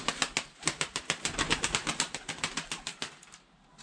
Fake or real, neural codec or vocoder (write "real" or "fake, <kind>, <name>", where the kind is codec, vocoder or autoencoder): real